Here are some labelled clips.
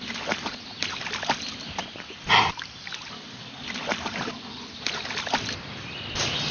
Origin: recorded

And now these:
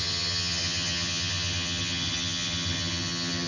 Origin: remade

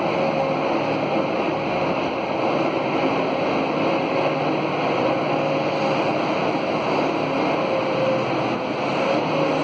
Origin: recorded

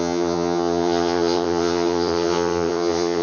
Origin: remade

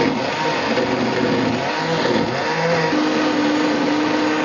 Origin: recorded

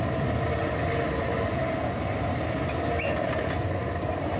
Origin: recorded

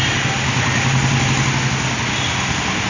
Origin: recorded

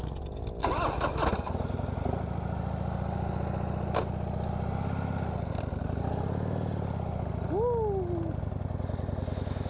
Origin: recorded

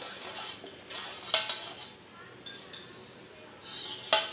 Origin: recorded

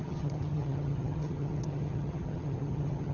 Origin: remade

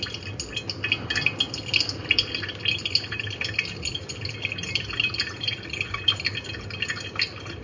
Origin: recorded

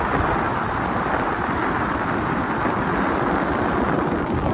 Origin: recorded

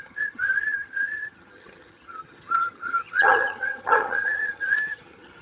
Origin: remade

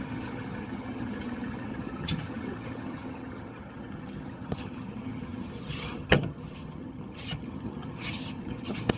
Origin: remade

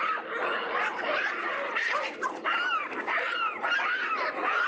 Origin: recorded